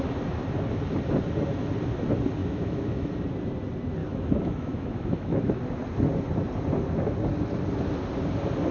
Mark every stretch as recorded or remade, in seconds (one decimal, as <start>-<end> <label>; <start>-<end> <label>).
0.0-2.4 recorded; 2.4-3.1 remade; 3.1-4.0 recorded; 4.0-5.6 remade; 5.6-8.7 recorded